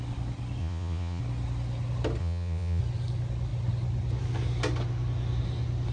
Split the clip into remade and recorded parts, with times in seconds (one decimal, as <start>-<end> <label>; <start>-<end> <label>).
0.0-0.6 recorded; 0.6-1.2 remade; 1.2-2.2 recorded; 2.2-2.8 remade; 2.8-5.9 recorded